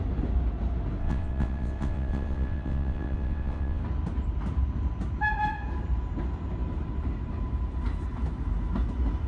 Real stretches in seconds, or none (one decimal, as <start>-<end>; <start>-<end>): 0.0-1.0; 3.8-9.3